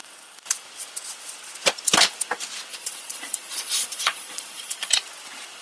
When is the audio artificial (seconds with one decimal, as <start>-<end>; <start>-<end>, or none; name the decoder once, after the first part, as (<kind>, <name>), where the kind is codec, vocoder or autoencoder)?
2.7-4.9 (vocoder, Vocos)